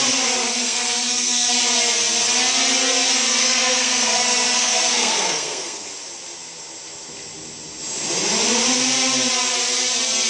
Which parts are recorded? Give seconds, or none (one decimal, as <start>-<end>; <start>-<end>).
0.0-0.4; 1.5-3.4; 5.9-10.3